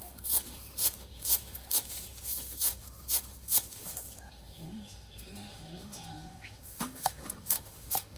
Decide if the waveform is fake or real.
fake